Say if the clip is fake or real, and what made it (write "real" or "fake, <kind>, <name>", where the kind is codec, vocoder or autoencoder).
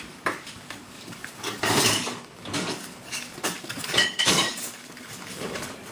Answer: fake, codec, DAC